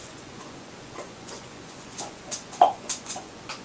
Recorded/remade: remade